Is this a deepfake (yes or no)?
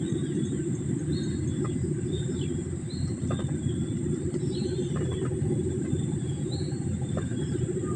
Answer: no